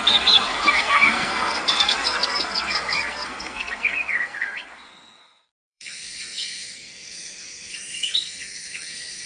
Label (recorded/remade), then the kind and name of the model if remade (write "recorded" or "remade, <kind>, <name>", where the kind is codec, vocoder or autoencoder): remade, codec, SNAC